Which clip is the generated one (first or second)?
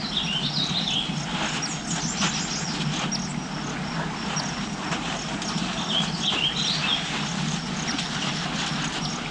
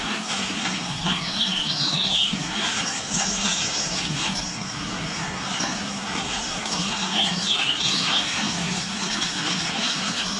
second